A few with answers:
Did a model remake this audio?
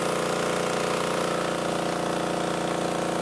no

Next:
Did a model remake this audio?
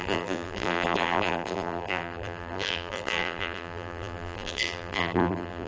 yes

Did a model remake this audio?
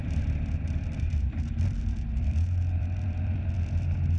yes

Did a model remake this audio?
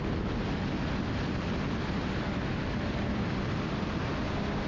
no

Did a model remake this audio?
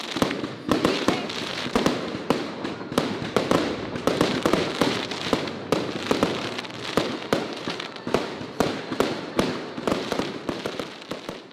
yes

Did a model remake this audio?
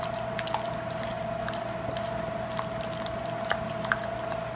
no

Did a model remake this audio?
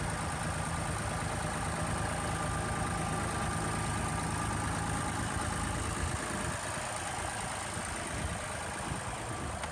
no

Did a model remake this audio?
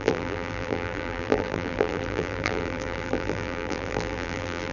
yes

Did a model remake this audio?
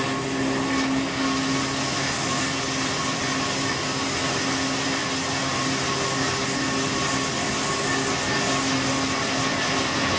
no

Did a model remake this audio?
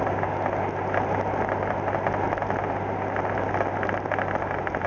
no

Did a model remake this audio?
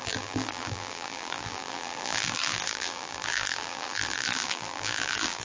yes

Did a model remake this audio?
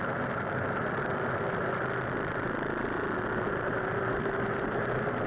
no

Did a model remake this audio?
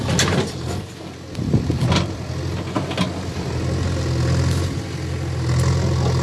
no